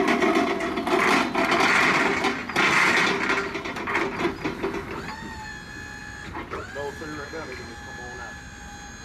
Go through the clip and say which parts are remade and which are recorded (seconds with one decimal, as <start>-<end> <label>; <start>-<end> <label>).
0.0-9.0 recorded